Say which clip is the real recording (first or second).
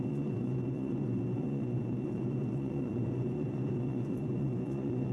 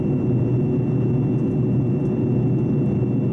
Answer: second